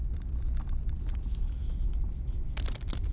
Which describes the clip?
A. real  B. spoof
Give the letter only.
B